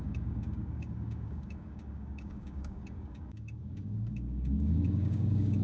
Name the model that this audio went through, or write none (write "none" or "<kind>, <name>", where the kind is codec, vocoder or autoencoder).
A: codec, DAC